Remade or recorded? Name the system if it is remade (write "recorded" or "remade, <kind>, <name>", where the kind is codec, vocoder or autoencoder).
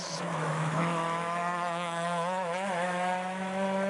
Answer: remade, autoencoder, DAC-VAE